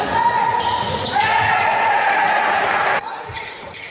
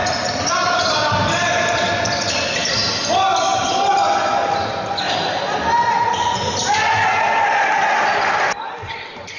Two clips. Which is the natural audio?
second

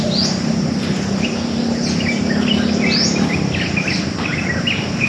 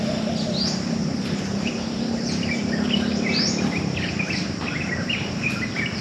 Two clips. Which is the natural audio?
first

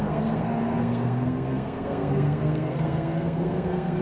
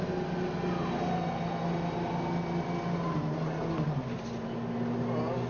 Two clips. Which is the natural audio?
second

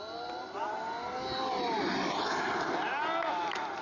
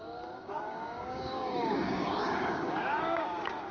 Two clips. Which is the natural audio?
first